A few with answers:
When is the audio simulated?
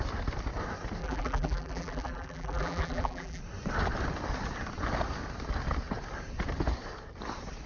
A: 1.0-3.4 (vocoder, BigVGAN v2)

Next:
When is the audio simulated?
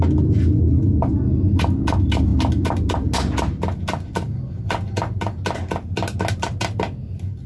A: none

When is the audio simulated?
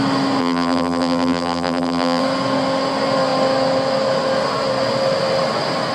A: 0.4-2.2 (vocoder, BigVGAN v2)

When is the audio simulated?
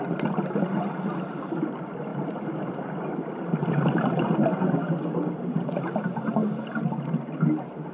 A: none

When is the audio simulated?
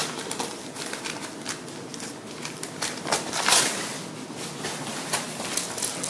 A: 1.9-5.6 (vocoder, BigVGAN v2)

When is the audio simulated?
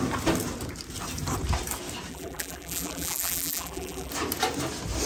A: 2.1-4.1 (vocoder, BigVGAN v2)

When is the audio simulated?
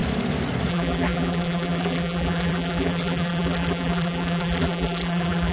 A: 0.7-5.5 (vocoder, BigVGAN v2)